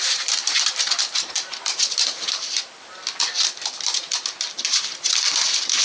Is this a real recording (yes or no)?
yes